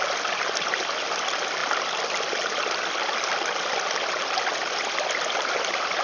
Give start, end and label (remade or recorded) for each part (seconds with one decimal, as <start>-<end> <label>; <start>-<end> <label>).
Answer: 0.0-6.0 recorded